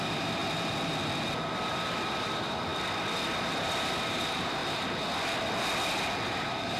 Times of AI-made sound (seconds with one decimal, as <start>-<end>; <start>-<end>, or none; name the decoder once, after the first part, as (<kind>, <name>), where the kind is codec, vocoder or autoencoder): 0.0-0.4 (vocoder, BigVGAN v2); 1.7-2.7; 3.4-4.6; 6.3-6.8